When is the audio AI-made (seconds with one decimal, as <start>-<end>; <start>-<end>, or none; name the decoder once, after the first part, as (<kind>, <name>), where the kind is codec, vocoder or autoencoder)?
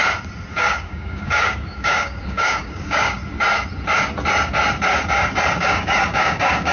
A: 0.5-3.2 (codec, DAC); 5.6-6.7